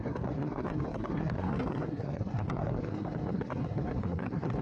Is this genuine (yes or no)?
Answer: no